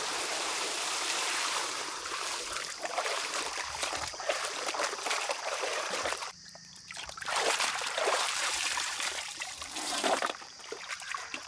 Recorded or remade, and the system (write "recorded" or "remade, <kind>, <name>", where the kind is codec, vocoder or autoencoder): remade, vocoder, BigVGAN v2